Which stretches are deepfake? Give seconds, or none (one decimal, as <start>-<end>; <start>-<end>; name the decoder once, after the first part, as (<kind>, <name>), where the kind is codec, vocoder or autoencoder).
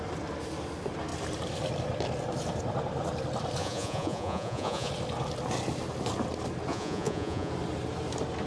3.6-4.9 (vocoder, Vocos); 6.7-7.5